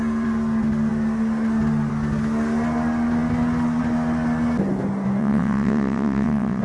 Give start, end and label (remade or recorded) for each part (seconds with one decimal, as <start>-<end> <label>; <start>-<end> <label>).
0.0-5.2 recorded; 5.2-6.6 remade